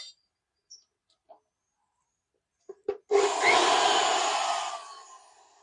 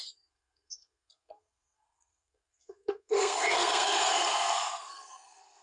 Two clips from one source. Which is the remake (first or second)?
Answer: second